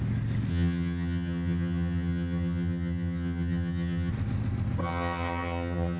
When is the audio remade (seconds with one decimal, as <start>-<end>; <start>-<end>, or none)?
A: 0.5-4.1; 4.8-6.0